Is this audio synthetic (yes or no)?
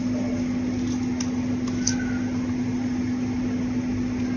no